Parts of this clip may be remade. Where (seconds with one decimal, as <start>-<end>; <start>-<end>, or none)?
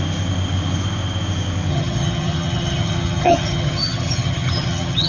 1.7-5.1